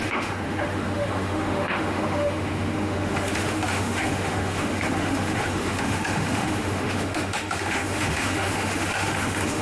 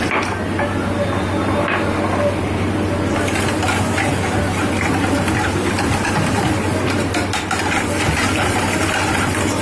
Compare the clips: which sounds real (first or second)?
second